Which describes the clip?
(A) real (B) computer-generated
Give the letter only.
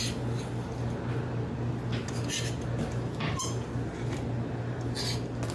A